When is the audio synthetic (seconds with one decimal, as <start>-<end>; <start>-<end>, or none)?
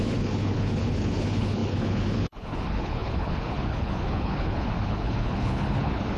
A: 0.0-6.2